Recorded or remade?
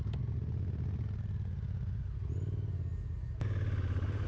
recorded